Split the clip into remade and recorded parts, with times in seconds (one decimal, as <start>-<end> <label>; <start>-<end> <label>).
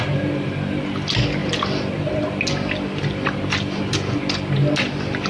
0.0-5.3 recorded